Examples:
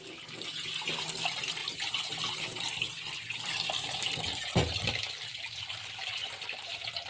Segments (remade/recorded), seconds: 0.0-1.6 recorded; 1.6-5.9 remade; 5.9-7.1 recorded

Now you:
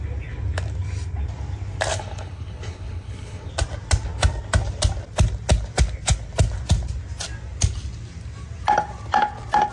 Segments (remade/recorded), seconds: 0.0-1.9 recorded; 1.9-3.5 remade; 3.5-9.7 recorded

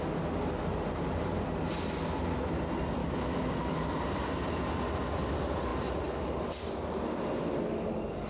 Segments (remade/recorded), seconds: 0.0-3.0 recorded; 3.0-3.5 remade; 3.5-8.3 recorded